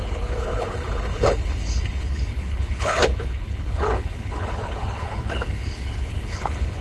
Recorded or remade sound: remade